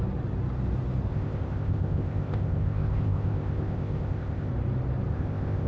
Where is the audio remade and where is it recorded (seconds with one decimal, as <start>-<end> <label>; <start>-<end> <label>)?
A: 0.0-1.1 recorded; 1.1-4.5 remade; 4.5-5.1 recorded; 5.1-5.7 remade